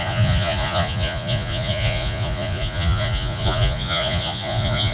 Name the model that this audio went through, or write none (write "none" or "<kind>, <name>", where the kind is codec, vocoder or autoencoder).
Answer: vocoder, Vocos